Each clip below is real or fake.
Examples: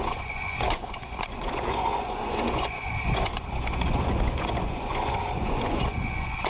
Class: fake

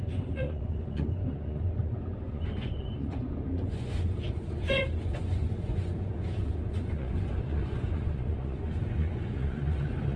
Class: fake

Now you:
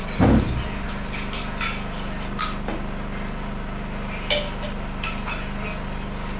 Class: real